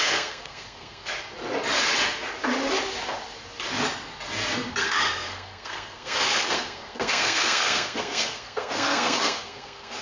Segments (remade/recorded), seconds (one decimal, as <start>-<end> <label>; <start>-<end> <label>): 0.0-1.1 remade; 1.1-4.7 recorded; 4.7-10.0 remade